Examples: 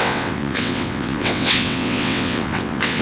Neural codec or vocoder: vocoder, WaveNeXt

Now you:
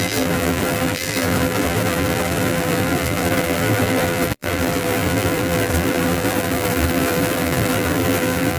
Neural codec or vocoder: vocoder, BigVGAN v2